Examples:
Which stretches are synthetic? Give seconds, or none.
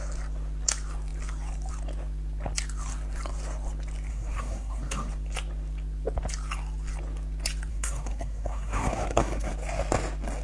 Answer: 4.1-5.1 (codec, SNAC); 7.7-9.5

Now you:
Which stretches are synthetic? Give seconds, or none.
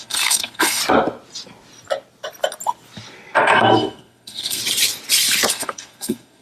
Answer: 0.0-0.8 (codec, SNAC); 3.4-4.6; 5.5-6.4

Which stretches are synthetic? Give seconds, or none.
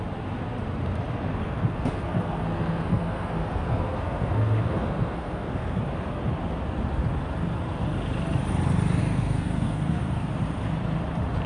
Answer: 1.4-5.8 (codec, SNAC); 9.0-10.3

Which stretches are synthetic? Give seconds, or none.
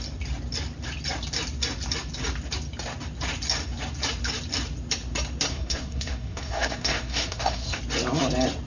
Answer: 5.5-7.8 (codec, SNAC)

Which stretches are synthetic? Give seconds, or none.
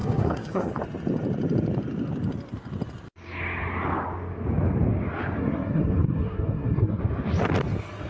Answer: 0.0-0.7 (codec, SNAC); 5.4-7.0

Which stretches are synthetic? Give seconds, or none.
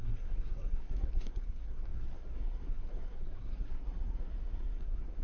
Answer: 0.0-5.2 (codec, SNAC)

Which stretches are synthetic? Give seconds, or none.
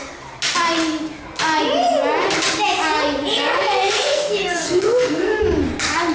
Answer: 3.3-5.4 (codec, SNAC)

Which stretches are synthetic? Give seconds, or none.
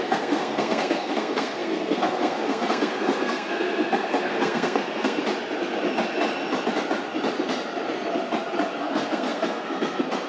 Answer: 0.0-5.2 (codec, SNAC); 8.8-10.3